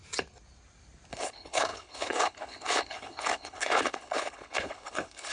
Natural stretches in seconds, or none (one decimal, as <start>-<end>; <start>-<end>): 0.0-1.1